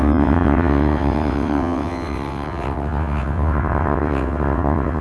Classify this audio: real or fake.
fake